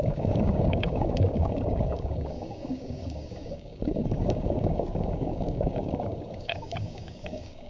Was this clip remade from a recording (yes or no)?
yes